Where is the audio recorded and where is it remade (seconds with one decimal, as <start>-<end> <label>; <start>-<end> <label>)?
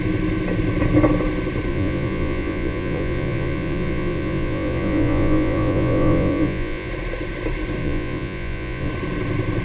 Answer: 0.0-1.7 recorded; 1.7-6.9 remade; 6.9-7.8 recorded; 7.8-8.9 remade; 8.9-9.6 recorded